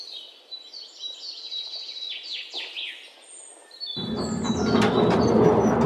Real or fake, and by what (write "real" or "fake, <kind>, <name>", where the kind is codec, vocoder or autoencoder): real